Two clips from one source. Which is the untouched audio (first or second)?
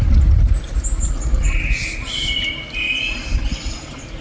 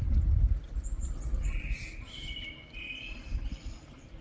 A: first